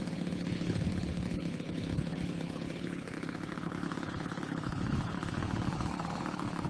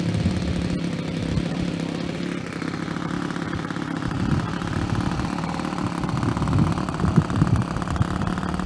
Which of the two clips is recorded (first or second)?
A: second